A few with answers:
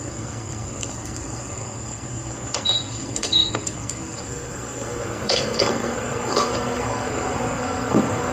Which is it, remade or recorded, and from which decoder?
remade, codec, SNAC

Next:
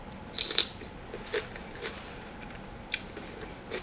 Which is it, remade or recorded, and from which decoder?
recorded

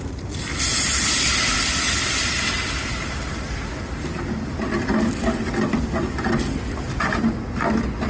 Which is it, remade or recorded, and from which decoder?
recorded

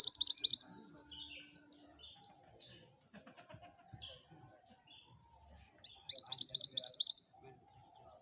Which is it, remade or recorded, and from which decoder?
recorded